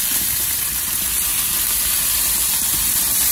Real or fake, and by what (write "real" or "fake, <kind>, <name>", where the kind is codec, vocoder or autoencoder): fake, vocoder, BigVGAN v2